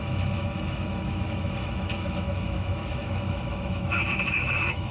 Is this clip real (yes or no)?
no